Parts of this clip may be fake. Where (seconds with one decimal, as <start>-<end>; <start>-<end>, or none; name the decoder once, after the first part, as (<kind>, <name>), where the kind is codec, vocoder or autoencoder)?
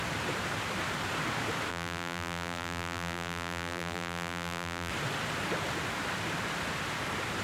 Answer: 1.7-4.9 (vocoder, BigVGAN v2)